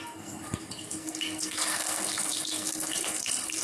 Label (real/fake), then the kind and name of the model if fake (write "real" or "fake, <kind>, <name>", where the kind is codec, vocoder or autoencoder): fake, codec, SNAC